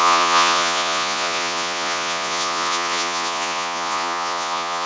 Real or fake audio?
fake